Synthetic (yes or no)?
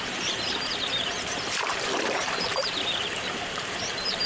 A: yes